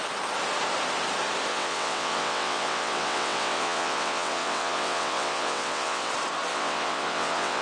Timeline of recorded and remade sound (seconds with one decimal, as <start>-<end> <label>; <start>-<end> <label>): 0.0-1.5 recorded; 1.5-6.1 remade; 6.1-6.5 recorded; 6.5-7.6 remade